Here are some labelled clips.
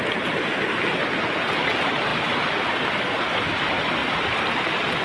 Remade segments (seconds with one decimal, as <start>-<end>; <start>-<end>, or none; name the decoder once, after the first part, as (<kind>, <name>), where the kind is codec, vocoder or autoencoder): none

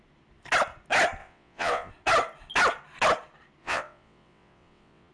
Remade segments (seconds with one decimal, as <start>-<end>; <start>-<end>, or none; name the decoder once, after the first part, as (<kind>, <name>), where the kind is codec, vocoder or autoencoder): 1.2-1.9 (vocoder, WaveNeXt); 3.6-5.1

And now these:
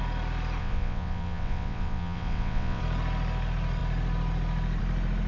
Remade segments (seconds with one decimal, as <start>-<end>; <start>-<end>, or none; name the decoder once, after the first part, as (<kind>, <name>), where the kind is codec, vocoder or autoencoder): 0.6-2.8 (vocoder, WaveNeXt)

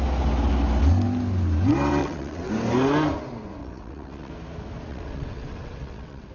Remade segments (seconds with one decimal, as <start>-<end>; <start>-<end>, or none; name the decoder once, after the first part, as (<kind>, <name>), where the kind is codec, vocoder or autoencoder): 2.0-2.5 (vocoder, WaveNeXt); 3.6-4.3; 4.9-6.3

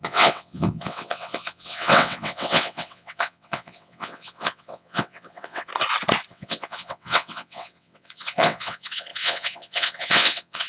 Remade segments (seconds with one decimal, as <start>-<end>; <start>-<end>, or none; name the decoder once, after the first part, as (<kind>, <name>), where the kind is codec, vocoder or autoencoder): 0.0-5.7 (vocoder, WaveNeXt); 6.3-10.7